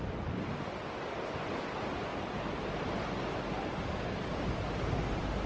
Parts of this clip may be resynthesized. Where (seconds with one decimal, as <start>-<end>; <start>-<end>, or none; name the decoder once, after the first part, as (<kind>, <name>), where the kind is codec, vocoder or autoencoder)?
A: none